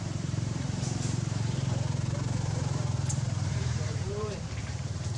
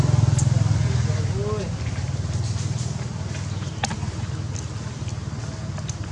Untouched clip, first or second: second